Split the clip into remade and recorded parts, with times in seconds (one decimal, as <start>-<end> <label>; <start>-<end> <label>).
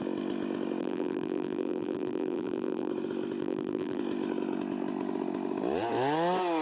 0.0-0.8 recorded; 0.8-2.9 remade; 2.9-3.4 recorded; 3.4-4.0 remade; 4.0-6.6 recorded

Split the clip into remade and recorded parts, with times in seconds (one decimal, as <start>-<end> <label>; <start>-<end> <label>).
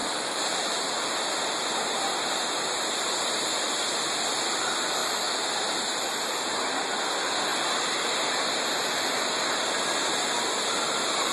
0.0-0.7 remade; 0.7-11.3 recorded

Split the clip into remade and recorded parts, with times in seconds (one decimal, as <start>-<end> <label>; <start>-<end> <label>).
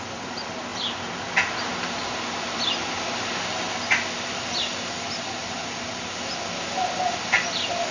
0.0-7.9 recorded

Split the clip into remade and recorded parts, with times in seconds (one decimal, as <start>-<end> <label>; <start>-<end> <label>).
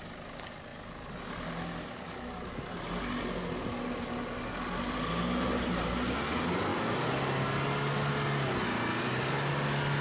0.0-10.0 recorded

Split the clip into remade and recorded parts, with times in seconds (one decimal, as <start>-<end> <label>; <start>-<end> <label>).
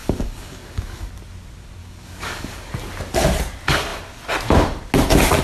0.0-1.1 remade; 1.1-1.8 recorded; 1.8-2.7 remade; 2.7-5.4 recorded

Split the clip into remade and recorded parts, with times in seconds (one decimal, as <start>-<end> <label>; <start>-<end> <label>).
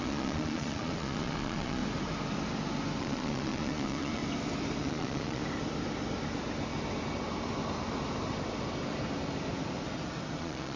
0.0-1.8 remade; 1.8-3.0 recorded; 3.0-4.2 remade; 4.2-4.8 recorded; 4.8-5.4 remade; 5.4-10.4 recorded; 10.4-10.8 remade